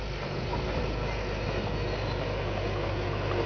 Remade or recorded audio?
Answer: recorded